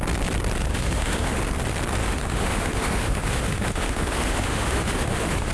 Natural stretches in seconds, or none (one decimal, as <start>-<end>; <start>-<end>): 0.0-0.7; 1.4-2.0